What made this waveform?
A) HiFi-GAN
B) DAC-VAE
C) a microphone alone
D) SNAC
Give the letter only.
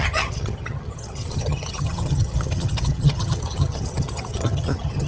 A